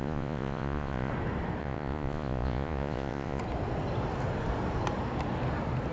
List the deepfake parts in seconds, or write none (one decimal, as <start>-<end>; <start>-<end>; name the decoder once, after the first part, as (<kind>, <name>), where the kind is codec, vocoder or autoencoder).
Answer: 0.0-1.1 (vocoder, Vocos); 1.6-3.4

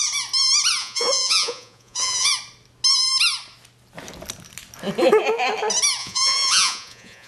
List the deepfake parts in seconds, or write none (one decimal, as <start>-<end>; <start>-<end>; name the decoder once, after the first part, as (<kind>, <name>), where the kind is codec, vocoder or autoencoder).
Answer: 0.8-2.3 (vocoder, Vocos); 6.0-7.3

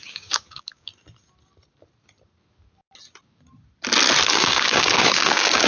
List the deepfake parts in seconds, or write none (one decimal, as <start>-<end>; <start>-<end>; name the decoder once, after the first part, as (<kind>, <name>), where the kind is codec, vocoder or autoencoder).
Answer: 0.0-0.9 (codec, DAC); 4.3-5.7

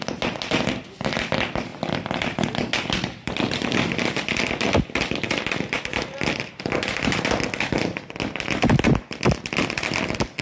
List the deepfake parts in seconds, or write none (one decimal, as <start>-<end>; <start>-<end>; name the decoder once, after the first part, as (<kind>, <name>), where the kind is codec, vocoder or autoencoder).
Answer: 1.7-6.6 (vocoder, BigVGAN v2)

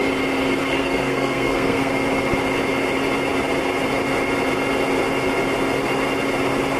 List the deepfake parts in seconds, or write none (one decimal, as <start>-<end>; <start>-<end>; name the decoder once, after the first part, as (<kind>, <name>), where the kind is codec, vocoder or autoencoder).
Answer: 0.6-1.9 (codec, SNAC)

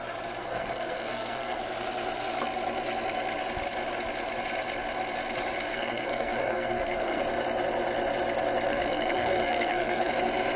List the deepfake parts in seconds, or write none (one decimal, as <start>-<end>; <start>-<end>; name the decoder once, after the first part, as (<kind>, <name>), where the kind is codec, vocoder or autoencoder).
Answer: 0.4-1.6 (codec, SNAC); 5.7-7.2; 8.7-10.1

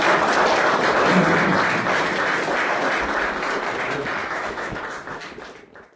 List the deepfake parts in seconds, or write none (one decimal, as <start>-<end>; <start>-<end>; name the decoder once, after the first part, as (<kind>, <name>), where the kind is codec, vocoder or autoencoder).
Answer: 4.2-4.8 (autoencoder, DAC-VAE)